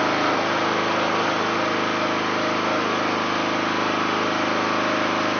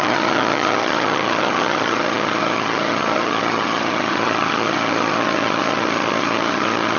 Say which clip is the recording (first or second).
first